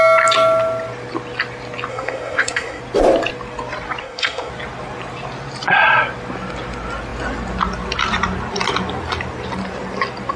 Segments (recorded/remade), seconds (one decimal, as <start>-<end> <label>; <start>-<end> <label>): 0.0-1.9 recorded; 1.9-2.8 remade; 2.8-4.0 recorded; 4.0-4.5 remade; 4.5-10.4 recorded

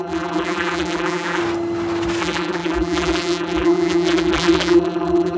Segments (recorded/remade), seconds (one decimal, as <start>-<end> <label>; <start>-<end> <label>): 0.0-1.4 remade; 1.4-2.2 recorded; 2.2-5.4 remade

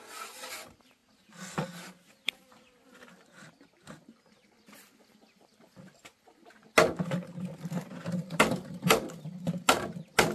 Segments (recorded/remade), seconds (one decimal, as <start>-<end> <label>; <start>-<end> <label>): 0.0-10.3 recorded

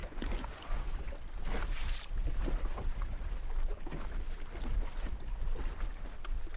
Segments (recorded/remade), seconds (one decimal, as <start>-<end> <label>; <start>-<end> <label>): 0.0-0.8 remade; 0.8-6.6 recorded

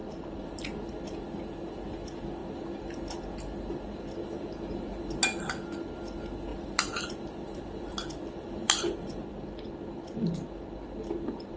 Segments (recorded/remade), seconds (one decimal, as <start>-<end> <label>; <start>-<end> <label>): 0.0-0.8 remade; 0.8-6.5 recorded; 6.5-9.7 remade; 9.7-11.6 recorded

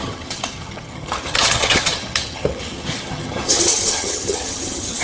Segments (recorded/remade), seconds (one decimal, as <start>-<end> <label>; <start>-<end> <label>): 0.0-5.0 remade

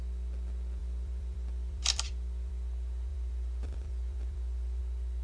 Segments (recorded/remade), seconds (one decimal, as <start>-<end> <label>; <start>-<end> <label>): 0.0-0.8 recorded; 0.8-2.5 remade; 2.5-3.1 recorded; 3.1-4.8 remade; 4.8-5.2 recorded